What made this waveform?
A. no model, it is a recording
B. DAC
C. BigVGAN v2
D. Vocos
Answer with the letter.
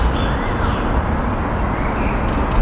A